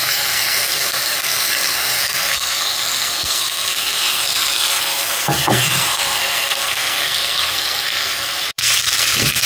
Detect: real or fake fake